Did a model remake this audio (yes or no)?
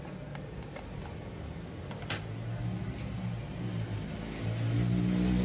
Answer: no